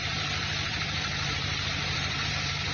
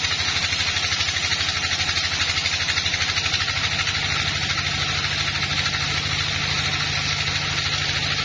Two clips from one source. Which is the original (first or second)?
second